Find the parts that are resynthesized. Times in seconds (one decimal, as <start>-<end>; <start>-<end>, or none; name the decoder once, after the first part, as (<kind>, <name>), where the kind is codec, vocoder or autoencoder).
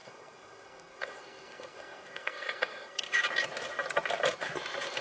0.0-3.0 (codec, SNAC)